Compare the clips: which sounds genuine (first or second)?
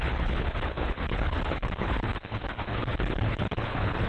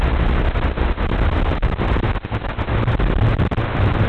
second